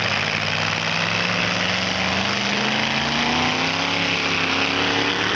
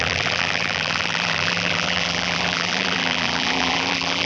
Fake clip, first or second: second